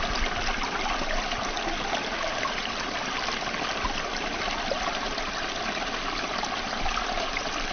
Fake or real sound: real